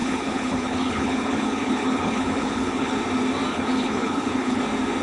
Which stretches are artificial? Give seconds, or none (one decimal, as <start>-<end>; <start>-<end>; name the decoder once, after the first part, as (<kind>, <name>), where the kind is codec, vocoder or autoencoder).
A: 0.0-3.0 (codec, HILCodec); 3.5-4.6